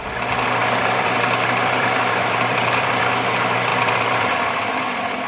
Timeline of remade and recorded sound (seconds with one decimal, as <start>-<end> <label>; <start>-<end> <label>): 0.0-0.6 recorded; 0.6-3.0 remade; 3.0-3.7 recorded; 3.7-5.3 remade